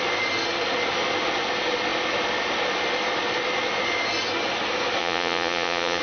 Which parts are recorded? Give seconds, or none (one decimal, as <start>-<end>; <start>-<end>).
0.0-5.0